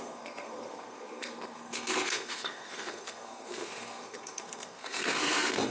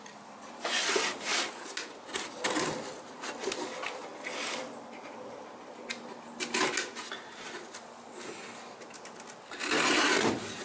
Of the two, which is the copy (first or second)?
first